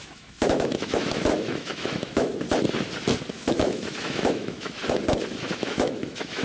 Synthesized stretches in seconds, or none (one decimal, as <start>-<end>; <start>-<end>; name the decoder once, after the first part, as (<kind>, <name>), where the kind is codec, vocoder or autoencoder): 0.0-2.3 (autoencoder, DAC-VAE); 3.3-4.8; 5.4-6.4